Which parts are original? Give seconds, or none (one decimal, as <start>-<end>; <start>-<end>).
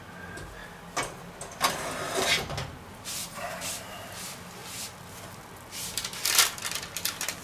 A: 0.0-2.9; 3.5-7.4